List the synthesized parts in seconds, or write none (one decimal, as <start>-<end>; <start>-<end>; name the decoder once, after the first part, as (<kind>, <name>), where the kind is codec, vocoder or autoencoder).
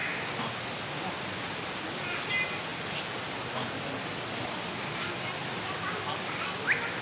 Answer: none